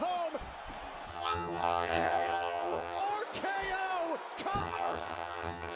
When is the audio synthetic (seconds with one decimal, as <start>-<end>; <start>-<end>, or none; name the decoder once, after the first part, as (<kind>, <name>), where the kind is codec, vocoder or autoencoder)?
1.1-3.0 (vocoder, HiFi-GAN); 4.6-5.8

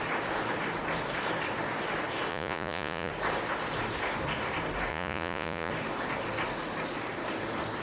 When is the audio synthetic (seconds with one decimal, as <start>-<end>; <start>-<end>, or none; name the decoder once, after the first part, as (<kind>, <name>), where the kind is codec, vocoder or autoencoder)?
2.3-3.1 (vocoder, Vocos); 4.9-5.7

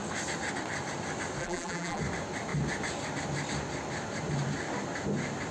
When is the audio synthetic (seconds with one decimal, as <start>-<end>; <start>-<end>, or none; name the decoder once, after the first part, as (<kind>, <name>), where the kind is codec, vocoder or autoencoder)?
1.4-2.0 (vocoder, BigVGAN v2)

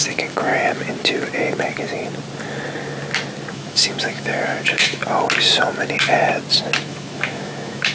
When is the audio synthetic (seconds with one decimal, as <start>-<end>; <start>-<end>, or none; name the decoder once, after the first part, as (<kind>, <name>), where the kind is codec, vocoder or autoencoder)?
0.0-0.5 (autoencoder, DAC-VAE); 3.5-5.0; 6.8-7.9

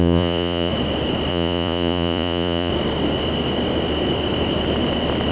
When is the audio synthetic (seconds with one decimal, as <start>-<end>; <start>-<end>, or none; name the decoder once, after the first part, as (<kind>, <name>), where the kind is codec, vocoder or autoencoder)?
0.0-0.7 (vocoder, Vocos); 1.3-2.7